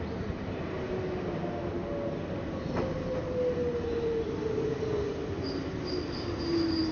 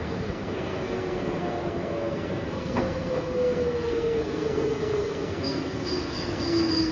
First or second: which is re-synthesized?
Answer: second